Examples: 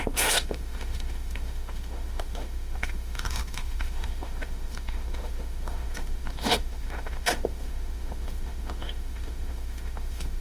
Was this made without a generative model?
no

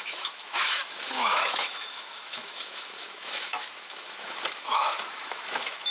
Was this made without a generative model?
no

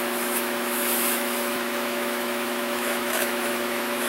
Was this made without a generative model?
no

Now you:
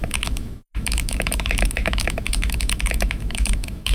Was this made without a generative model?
no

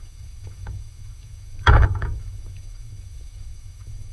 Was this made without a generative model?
no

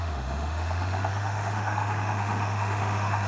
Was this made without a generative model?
no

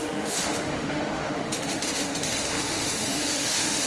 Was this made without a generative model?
no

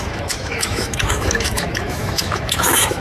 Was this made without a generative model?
no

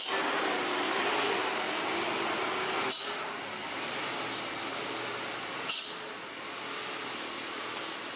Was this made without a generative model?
yes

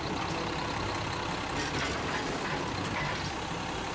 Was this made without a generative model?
yes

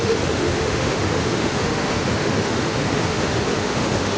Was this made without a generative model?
no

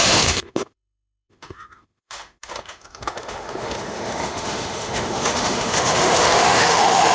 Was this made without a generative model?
no